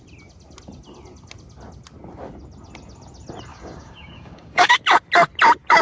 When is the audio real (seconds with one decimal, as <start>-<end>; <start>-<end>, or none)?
0.0-3.5; 4.7-5.8